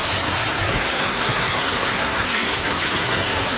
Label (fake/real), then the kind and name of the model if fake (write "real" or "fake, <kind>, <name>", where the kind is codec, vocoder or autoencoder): fake, codec, SNAC